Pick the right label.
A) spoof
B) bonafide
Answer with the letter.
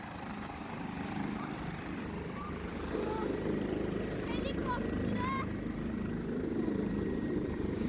A